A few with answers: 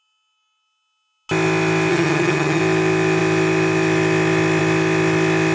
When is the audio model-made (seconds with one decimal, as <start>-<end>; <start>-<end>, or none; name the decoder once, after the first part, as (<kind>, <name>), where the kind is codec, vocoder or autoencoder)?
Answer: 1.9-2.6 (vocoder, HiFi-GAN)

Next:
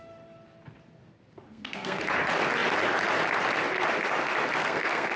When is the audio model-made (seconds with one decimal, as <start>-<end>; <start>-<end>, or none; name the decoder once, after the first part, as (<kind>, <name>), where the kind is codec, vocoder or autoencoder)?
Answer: 1.5-2.0 (codec, SNAC); 4.6-5.2

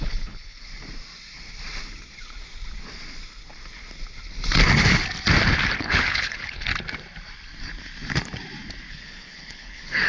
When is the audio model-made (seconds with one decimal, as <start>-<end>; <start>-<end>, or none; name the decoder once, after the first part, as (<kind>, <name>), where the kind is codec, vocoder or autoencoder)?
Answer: 0.0-0.7 (codec, HILCodec); 5.8-6.7; 8.9-10.1

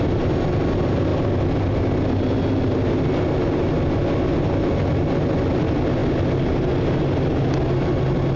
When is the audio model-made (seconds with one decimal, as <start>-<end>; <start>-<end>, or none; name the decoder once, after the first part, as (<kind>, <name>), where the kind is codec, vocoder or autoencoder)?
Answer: none

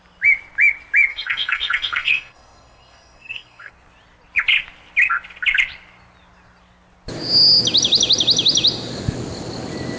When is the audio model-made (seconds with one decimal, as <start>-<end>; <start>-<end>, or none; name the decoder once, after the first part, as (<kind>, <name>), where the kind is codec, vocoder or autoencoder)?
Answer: 1.1-3.7 (codec, SNAC)

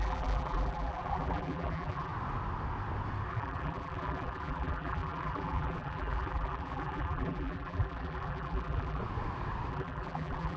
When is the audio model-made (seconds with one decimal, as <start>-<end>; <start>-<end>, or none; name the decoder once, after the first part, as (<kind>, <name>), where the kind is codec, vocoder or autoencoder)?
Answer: 0.0-2.1 (vocoder, BigVGAN v2); 3.3-9.0; 9.7-10.6